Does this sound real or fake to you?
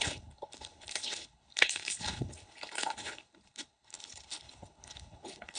fake